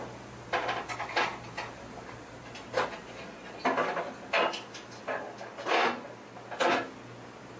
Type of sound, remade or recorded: recorded